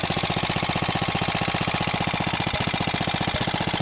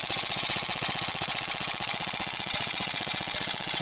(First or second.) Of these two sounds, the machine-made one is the second